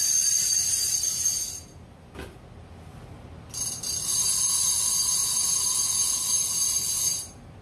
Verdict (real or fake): real